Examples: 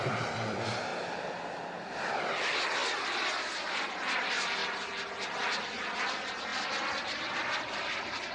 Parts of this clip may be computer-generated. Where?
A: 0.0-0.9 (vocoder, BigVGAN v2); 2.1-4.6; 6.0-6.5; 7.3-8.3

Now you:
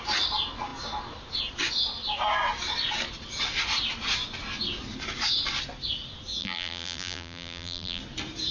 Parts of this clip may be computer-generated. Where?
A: 6.4-8.0 (vocoder, BigVGAN v2)

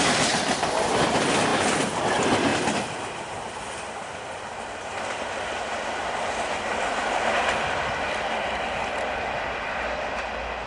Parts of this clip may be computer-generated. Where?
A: none

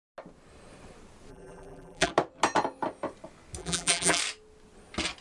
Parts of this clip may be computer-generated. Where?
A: 1.3-2.1 (vocoder, BigVGAN v2); 3.6-4.2

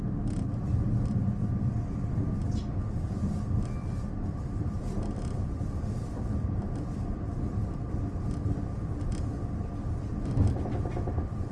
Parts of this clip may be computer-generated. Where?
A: 3.8-8.3 (vocoder, BigVGAN v2)

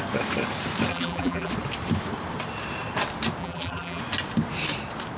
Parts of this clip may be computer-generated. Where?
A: 0.9-1.5 (vocoder, BigVGAN v2); 3.4-4.0

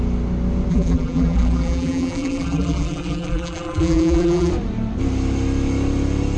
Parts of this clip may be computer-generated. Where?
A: 0.7-4.5 (vocoder, BigVGAN v2)

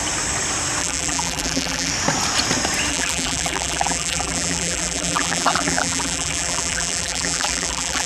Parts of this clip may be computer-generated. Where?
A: 0.8-1.9 (vocoder, BigVGAN v2); 2.9-8.1